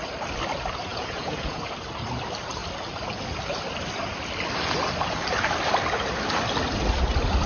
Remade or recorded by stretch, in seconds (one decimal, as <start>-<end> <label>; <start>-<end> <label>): 0.0-0.9 recorded; 0.9-1.6 remade; 1.6-7.5 recorded